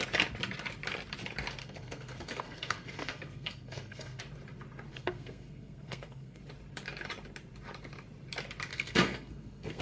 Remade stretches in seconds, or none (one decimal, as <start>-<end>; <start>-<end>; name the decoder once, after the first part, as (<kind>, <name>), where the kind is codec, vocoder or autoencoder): 1.6-4.2 (codec, SNAC); 4.9-6.4; 8.7-9.8